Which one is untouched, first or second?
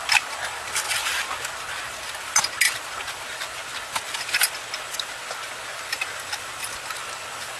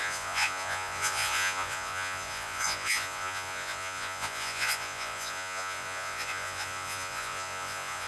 first